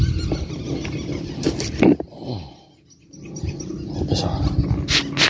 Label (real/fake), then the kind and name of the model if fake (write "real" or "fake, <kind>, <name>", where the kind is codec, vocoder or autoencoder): real